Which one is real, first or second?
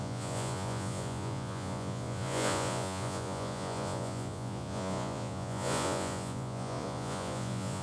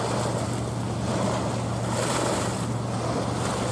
second